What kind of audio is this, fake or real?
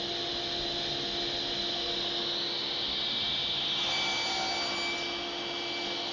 real